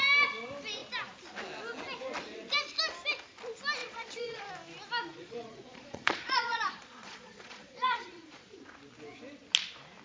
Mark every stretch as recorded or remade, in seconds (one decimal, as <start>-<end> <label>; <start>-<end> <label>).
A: 0.0-3.8 recorded; 3.8-4.5 remade; 4.5-5.1 recorded; 5.1-8.5 remade; 8.5-10.0 recorded